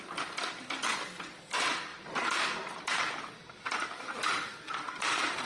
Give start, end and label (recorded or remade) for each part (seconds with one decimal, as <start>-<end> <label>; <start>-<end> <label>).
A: 0.0-1.9 recorded; 1.9-5.5 remade